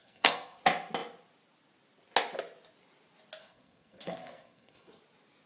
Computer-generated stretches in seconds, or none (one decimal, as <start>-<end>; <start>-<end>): 0.0-0.6; 3.4-5.0